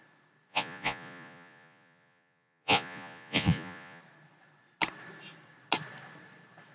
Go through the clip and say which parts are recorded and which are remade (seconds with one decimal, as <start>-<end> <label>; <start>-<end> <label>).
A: 0.0-0.5 recorded; 0.5-4.0 remade; 4.0-6.7 recorded